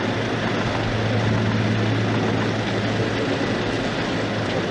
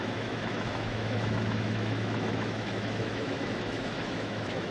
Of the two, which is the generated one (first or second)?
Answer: second